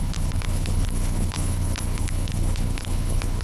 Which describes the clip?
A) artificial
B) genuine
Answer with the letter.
A